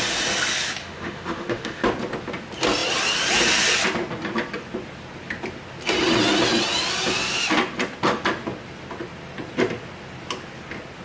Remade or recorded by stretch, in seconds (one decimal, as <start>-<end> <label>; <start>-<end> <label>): 0.0-0.8 recorded; 0.8-1.8 remade; 1.8-11.0 recorded